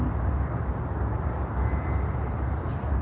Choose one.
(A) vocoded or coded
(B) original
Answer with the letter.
B